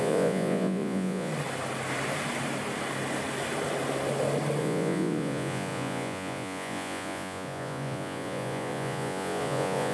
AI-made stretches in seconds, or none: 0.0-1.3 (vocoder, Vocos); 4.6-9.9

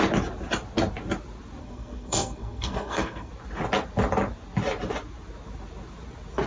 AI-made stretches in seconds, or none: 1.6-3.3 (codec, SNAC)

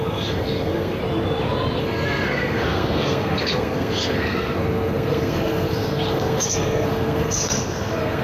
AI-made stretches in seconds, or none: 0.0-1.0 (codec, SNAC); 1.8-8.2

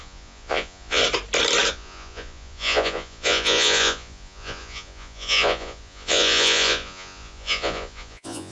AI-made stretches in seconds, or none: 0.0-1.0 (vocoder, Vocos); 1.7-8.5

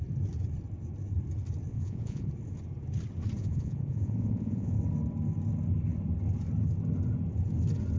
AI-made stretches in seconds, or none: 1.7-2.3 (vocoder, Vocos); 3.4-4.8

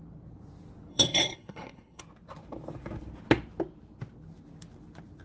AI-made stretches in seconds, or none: 0.9-2.0 (codec, SNAC)

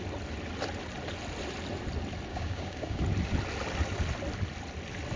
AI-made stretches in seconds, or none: 2.3-3.0 (codec, DAC)